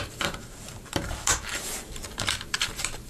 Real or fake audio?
fake